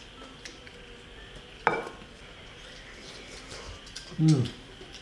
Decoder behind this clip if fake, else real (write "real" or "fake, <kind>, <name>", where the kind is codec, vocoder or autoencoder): real